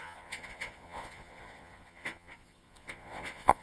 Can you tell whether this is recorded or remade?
remade